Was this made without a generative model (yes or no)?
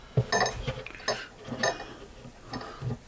yes